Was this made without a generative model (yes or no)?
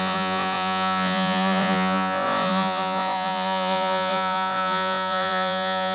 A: no